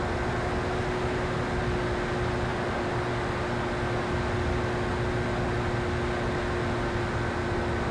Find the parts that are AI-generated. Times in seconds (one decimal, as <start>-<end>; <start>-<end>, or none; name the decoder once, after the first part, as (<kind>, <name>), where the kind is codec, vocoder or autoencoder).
none